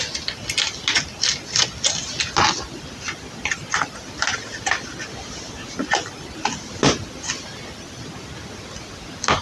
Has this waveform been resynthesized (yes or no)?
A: no